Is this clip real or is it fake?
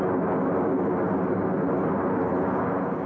real